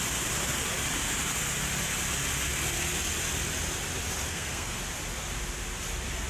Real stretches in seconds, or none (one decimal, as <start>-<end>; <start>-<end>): 0.0-4.3; 4.8-6.3